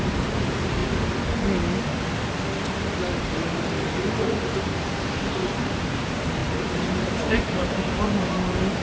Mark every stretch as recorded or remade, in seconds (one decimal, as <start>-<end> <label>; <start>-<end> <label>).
0.0-0.8 remade; 0.8-4.1 recorded; 4.1-8.8 remade